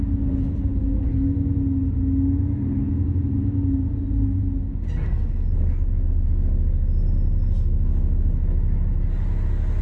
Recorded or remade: recorded